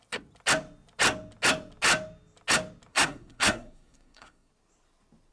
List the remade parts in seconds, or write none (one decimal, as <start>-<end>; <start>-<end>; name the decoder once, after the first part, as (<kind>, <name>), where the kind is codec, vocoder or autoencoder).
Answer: 2.9-4.5 (codec, SNAC)